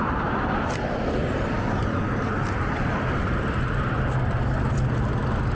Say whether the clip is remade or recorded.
remade